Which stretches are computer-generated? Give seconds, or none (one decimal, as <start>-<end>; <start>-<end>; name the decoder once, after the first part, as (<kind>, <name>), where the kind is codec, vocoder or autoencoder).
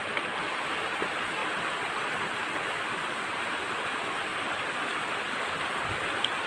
1.4-3.4 (vocoder, BigVGAN v2); 4.3-6.5